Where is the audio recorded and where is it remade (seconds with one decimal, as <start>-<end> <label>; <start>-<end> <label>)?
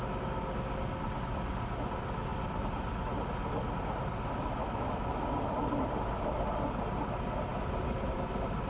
0.0-4.6 recorded; 4.6-5.2 remade; 5.2-8.7 recorded